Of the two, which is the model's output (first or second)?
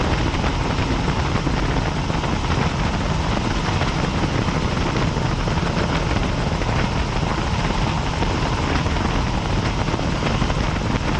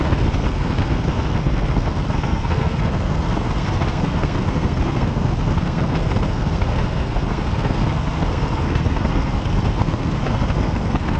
second